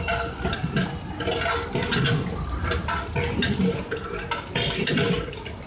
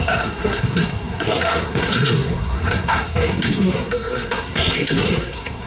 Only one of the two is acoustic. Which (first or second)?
first